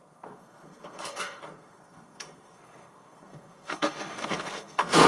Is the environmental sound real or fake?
fake